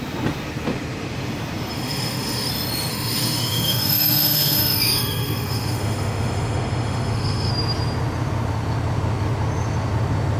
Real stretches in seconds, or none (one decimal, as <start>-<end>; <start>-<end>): 0.0-1.7; 2.5-2.9; 7.5-10.4